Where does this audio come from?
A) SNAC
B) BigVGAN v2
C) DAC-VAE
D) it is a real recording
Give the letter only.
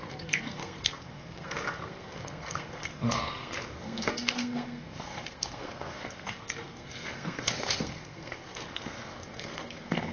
A